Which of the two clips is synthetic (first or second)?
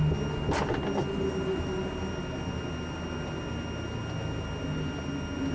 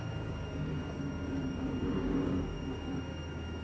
second